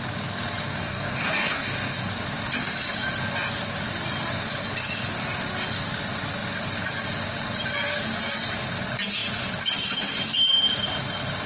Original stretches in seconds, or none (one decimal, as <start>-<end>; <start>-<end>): 0.0-0.7; 2.1-11.5